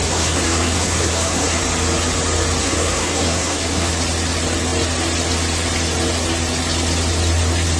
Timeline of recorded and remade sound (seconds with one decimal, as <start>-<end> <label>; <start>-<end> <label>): 0.0-1.6 remade; 1.6-2.6 recorded; 2.6-3.9 remade; 3.9-7.8 recorded